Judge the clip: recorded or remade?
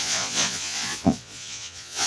remade